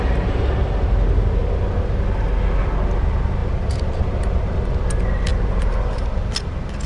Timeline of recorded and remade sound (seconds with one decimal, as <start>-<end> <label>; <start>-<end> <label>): 0.0-5.3 recorded; 5.3-6.3 remade; 6.3-6.9 recorded